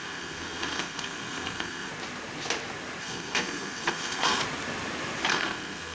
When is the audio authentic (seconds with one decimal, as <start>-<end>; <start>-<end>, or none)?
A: 1.9-3.0; 4.4-5.3